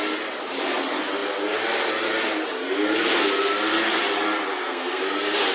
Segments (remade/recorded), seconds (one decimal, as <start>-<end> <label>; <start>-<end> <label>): 0.0-4.5 recorded; 4.5-5.0 remade; 5.0-5.5 recorded